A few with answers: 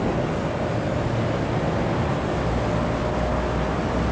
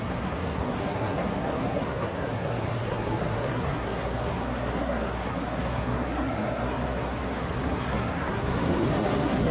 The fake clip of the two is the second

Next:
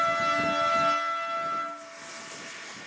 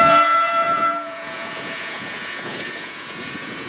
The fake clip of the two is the second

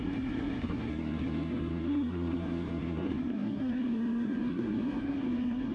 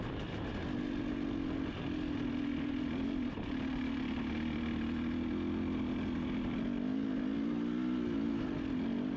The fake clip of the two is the first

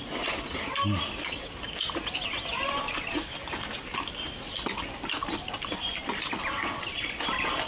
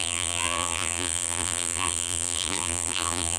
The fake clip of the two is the second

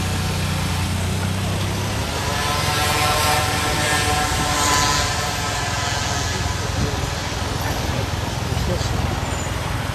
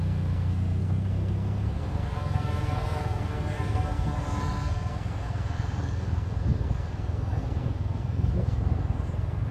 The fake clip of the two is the second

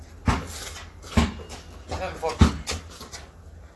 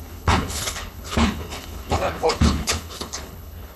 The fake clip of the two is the second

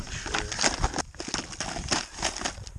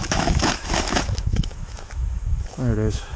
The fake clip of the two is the second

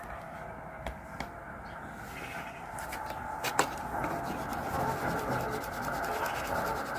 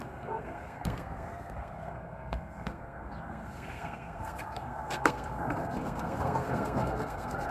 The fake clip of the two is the second